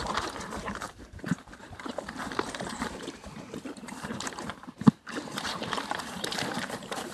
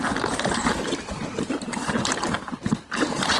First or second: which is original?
second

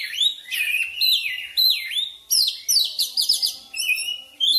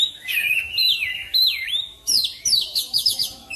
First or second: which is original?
first